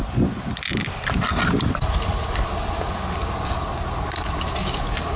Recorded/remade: recorded